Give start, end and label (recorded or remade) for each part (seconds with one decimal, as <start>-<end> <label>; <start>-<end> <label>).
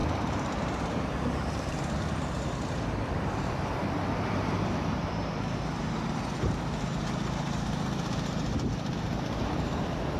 0.0-10.2 remade